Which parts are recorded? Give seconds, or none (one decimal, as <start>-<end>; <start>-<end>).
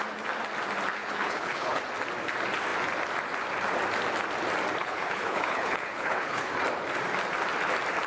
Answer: 0.0-1.0; 1.8-4.8; 6.5-8.1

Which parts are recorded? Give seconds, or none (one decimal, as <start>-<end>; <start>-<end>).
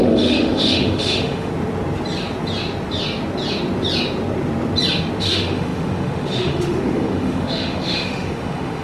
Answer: 1.5-5.2